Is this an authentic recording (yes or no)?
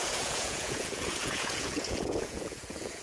no